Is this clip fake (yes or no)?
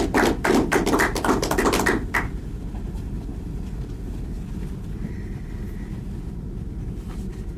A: no